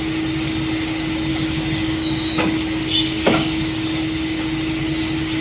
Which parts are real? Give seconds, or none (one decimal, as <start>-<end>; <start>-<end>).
0.0-1.3; 4.4-5.4

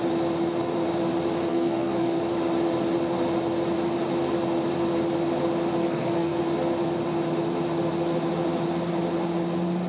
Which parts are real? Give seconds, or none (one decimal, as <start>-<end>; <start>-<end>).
0.0-1.5; 2.2-5.8; 6.4-9.9

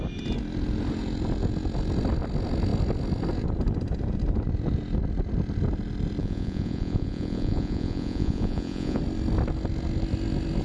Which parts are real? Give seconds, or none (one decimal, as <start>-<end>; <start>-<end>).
0.0-6.2; 9.0-10.6